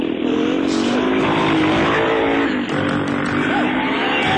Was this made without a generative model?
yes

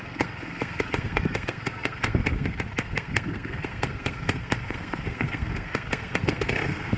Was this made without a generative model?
no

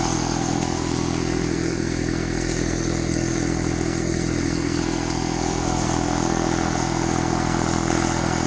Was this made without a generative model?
no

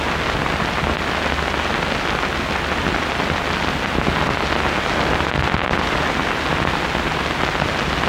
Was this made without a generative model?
yes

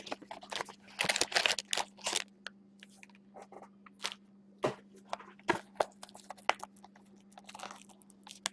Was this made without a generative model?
yes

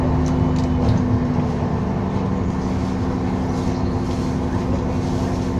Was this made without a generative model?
yes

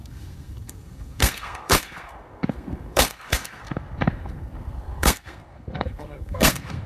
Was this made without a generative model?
no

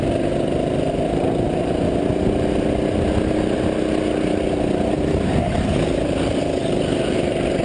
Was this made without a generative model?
yes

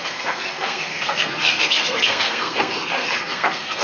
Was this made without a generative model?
no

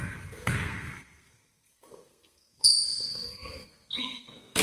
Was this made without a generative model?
no